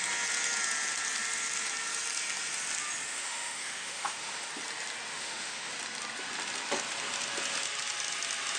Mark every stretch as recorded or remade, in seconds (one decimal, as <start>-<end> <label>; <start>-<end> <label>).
0.0-3.1 recorded; 3.1-4.5 remade; 4.5-5.1 recorded; 5.1-5.7 remade; 5.7-8.6 recorded